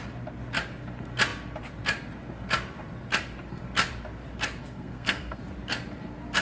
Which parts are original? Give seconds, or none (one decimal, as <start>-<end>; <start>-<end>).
0.0-4.6; 5.4-6.4